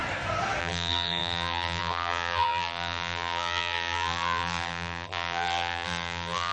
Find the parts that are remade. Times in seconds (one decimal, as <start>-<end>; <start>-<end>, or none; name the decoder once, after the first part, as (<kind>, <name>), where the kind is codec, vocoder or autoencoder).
0.6-6.5 (vocoder, BigVGAN v2)